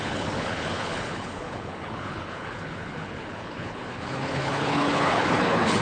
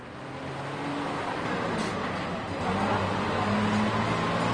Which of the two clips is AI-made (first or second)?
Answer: first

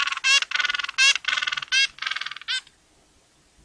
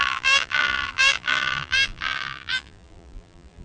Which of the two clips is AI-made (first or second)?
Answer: second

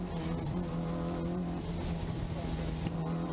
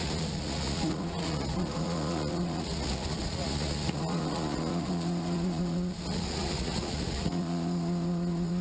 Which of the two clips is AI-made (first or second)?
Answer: second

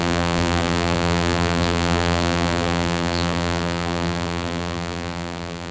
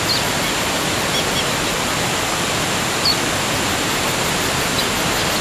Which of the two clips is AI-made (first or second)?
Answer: first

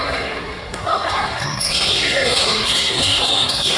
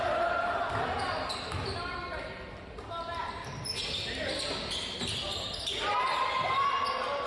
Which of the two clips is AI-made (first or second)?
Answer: first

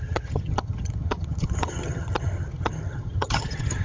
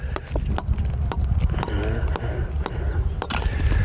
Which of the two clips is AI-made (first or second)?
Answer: first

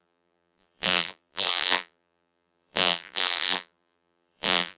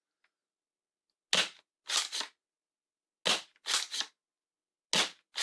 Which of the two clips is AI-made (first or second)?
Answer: first